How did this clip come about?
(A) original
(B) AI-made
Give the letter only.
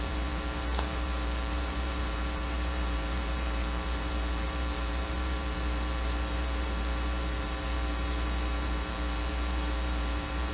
B